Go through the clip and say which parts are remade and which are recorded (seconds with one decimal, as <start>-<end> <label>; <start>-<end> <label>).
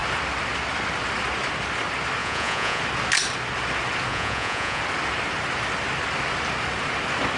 0.0-2.2 recorded; 2.2-2.8 remade; 2.8-4.1 recorded; 4.1-4.8 remade; 4.8-7.4 recorded